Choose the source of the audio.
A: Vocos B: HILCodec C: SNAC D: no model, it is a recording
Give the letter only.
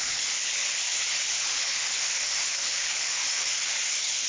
B